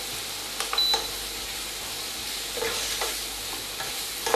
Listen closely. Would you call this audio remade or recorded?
recorded